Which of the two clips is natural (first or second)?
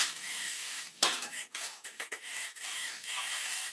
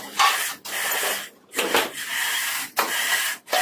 second